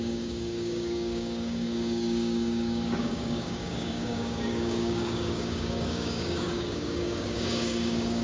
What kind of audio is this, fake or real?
fake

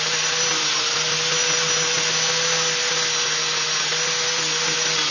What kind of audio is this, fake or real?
real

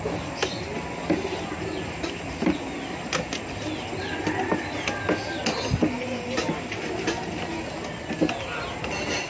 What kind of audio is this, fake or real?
real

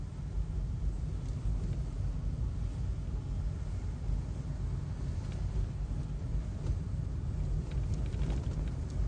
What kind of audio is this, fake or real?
real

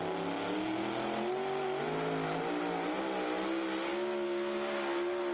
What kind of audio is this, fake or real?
real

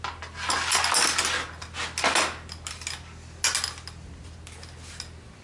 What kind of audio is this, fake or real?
real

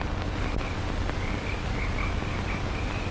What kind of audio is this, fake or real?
real